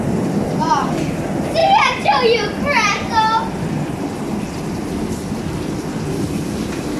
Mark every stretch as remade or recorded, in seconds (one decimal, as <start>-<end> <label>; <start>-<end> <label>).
0.0-7.0 remade